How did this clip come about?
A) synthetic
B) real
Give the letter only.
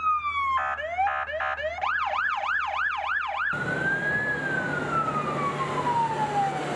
B